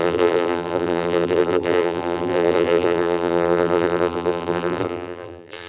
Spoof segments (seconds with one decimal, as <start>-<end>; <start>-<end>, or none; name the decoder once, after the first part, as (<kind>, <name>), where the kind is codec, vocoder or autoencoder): 0.0-5.7 (vocoder, BigVGAN v2)